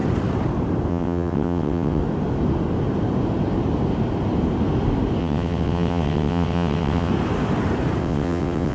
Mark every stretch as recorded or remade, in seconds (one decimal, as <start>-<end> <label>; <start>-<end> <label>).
0.0-0.9 recorded; 0.9-2.0 remade; 2.0-5.2 recorded; 5.2-7.1 remade; 7.1-8.0 recorded; 8.0-8.7 remade